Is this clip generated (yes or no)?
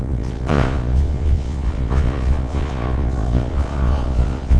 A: yes